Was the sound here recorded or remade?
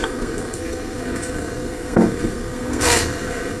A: remade